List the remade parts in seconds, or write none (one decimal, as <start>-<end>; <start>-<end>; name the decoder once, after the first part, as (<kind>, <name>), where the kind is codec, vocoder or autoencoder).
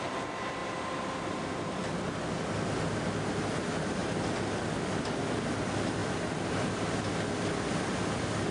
none